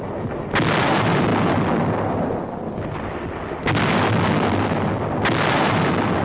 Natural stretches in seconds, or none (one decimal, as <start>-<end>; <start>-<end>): 0.0-6.2